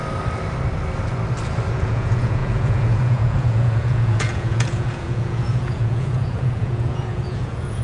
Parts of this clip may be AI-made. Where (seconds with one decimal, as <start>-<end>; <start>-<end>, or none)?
1.7-7.8